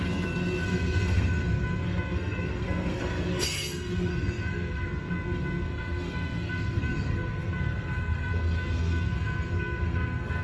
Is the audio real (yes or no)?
no